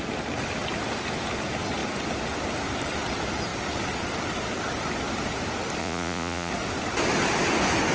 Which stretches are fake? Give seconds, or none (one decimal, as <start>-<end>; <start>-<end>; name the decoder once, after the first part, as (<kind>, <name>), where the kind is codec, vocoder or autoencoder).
5.8-6.5 (vocoder, Vocos)